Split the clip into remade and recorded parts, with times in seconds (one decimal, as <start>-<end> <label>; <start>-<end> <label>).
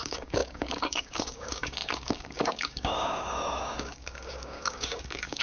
0.0-5.4 remade